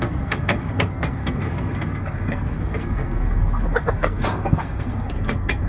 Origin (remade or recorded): remade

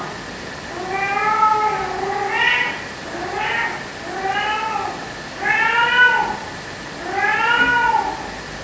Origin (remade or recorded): recorded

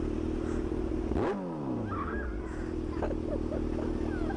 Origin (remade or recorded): recorded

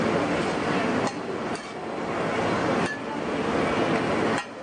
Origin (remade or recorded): recorded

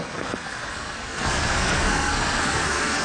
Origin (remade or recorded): remade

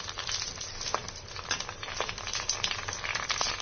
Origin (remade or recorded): recorded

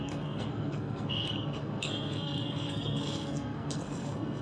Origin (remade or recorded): remade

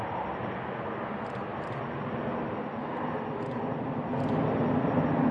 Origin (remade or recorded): recorded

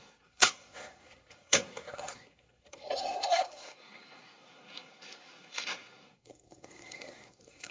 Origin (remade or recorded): remade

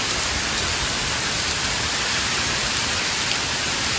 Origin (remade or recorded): recorded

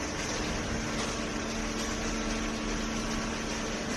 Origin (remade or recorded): recorded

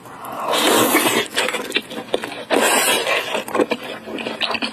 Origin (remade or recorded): recorded